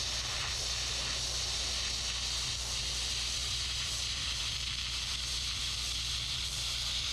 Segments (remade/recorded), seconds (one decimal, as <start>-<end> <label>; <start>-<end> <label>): 0.0-3.4 recorded; 3.4-4.4 remade; 4.4-7.1 recorded